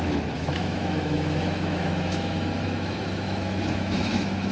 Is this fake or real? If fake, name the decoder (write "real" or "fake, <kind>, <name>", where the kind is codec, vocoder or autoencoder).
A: fake, autoencoder, DAC-VAE